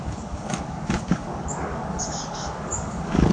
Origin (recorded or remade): remade